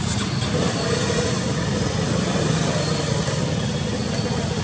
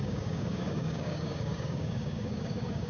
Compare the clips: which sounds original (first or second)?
first